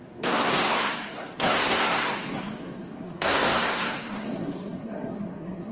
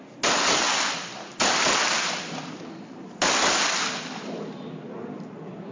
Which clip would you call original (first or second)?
second